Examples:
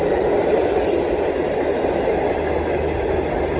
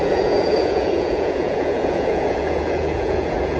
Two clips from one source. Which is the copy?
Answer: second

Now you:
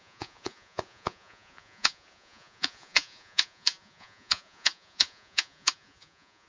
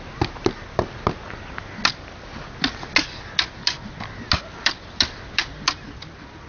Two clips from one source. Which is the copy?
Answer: first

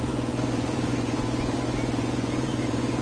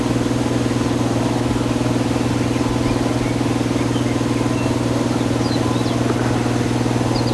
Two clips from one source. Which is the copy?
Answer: first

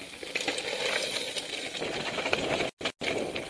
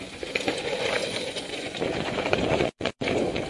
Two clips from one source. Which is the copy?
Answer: second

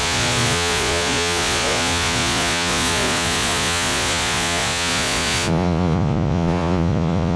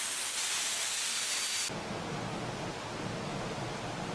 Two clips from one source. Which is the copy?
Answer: first